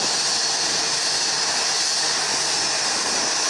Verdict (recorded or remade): recorded